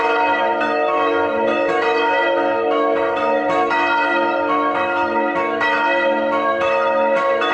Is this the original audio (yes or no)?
no